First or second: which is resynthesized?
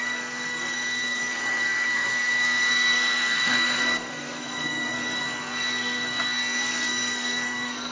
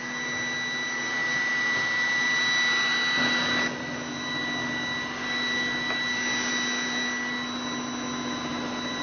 first